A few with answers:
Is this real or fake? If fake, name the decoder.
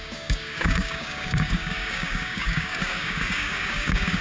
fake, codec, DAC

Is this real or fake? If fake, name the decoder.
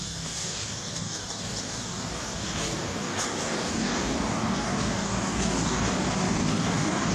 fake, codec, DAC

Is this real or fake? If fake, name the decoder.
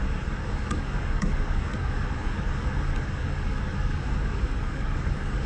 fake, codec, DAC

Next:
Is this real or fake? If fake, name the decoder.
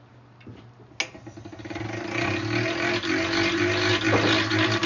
real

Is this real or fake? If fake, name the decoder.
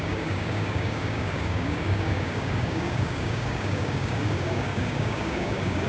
fake, codec, DAC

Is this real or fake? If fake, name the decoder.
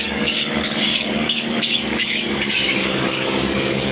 fake, codec, DAC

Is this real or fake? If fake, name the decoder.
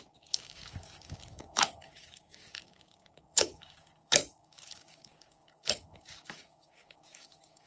fake, codec, DAC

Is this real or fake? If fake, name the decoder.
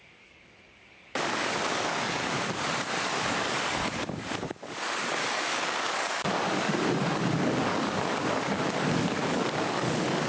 fake, codec, DAC